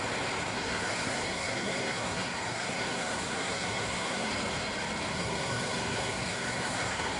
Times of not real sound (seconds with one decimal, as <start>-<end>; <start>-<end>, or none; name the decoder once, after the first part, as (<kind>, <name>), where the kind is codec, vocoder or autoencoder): 0.4-4.3 (codec, SNAC); 5.1-7.2